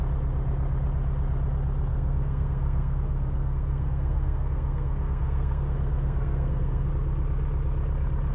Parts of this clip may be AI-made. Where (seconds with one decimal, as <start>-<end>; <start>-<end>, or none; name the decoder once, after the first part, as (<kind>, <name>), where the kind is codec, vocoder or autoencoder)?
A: 1.9-6.9 (codec, SNAC)